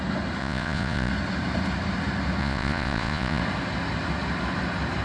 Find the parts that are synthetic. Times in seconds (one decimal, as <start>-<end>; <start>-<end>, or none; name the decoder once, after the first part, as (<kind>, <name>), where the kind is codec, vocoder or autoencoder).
0.4-1.1 (vocoder, Vocos); 2.4-3.4